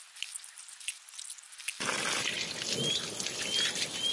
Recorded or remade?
recorded